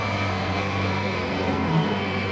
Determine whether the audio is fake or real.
fake